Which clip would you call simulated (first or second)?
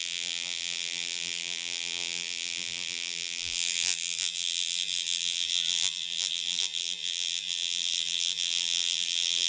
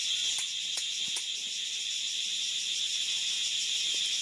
first